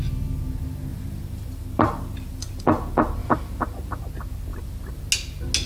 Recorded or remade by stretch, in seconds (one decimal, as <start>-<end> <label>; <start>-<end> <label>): 0.0-0.9 recorded; 0.9-2.6 remade; 2.6-3.2 recorded; 3.2-4.0 remade; 4.0-4.5 recorded; 4.5-5.0 remade; 5.0-5.7 recorded